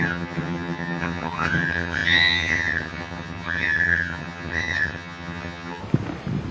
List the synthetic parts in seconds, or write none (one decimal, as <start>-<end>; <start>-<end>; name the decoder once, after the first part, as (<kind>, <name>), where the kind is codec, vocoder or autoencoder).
0.0-5.8 (vocoder, HiFi-GAN)